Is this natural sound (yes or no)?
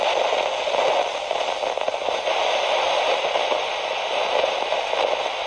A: yes